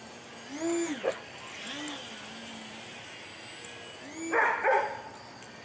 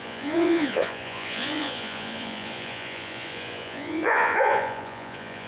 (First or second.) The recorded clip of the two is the first